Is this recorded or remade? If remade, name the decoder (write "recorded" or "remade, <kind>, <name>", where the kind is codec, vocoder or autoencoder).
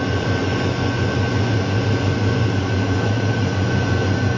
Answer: remade, vocoder, Vocos